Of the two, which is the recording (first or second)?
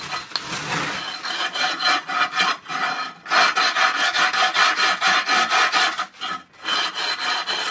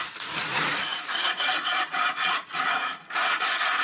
first